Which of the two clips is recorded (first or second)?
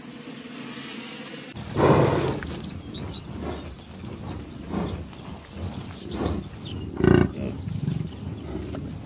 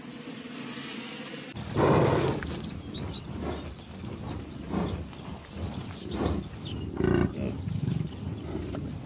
first